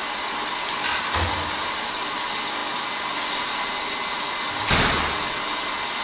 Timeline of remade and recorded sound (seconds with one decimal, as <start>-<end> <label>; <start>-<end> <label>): 0.0-6.0 recorded